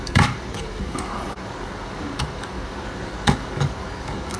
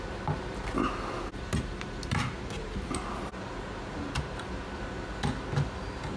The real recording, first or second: second